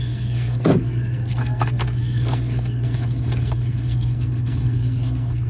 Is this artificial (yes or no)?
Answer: yes